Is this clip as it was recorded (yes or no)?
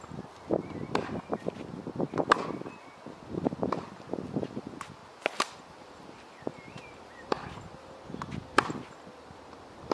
yes